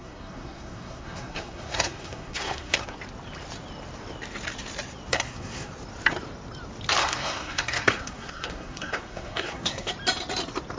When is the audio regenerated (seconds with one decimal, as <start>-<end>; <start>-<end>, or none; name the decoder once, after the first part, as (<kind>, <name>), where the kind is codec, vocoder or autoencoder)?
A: 0.0-3.0 (codec, SNAC); 5.1-5.7; 7.0-9.9